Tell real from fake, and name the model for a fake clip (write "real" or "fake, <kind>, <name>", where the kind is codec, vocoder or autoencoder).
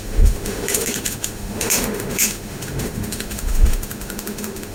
fake, autoencoder, DAC-VAE